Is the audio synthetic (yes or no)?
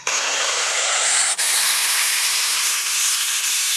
yes